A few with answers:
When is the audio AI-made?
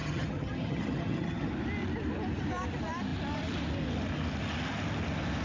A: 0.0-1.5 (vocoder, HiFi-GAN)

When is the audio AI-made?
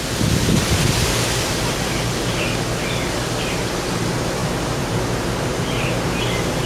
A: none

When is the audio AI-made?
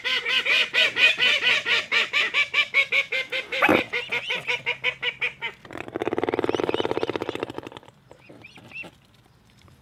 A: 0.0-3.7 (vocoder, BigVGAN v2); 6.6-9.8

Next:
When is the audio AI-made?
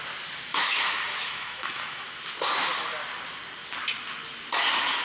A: 0.5-2.2 (autoencoder, DAC-VAE)